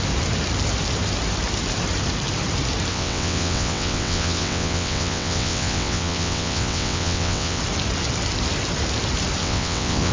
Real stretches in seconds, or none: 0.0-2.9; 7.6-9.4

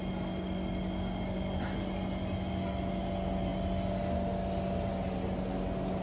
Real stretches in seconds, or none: 0.0-6.0